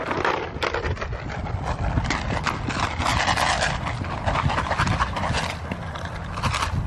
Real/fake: real